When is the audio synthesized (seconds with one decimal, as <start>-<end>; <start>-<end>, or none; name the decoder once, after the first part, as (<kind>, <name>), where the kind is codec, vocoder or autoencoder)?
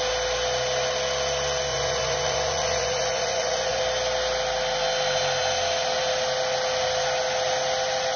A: 1.7-3.8 (vocoder, Vocos)